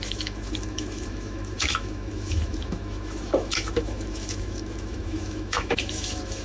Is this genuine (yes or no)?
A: no